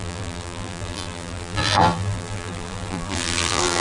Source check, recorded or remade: remade